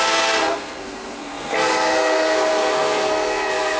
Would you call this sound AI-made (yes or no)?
yes